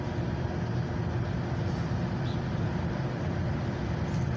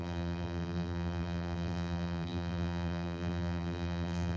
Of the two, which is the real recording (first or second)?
first